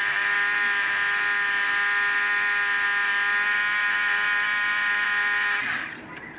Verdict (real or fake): real